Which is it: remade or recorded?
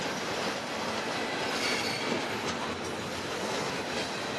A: recorded